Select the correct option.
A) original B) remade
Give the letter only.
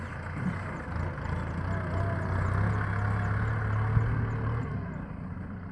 A